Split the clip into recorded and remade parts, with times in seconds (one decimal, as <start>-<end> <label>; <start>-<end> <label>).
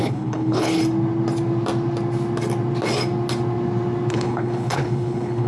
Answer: 0.0-0.8 remade; 0.8-4.1 recorded; 4.1-5.5 remade